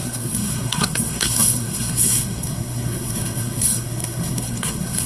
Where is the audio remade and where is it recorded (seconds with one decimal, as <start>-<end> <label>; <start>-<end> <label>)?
0.0-5.1 remade